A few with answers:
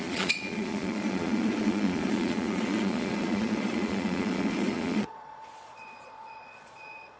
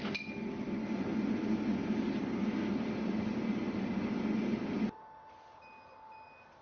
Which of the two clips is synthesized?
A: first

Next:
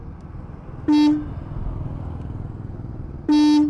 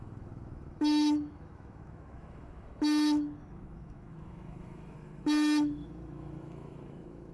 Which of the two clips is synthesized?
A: second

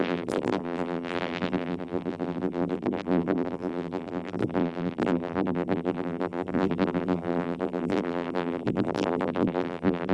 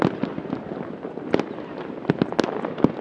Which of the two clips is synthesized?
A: first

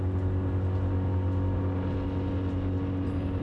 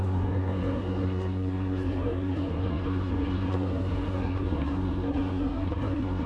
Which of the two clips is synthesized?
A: second